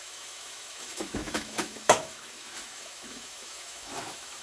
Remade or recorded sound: remade